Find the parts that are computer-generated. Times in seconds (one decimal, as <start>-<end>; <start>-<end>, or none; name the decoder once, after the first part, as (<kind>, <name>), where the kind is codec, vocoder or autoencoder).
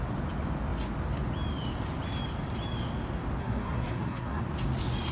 3.4-4.4 (codec, SNAC)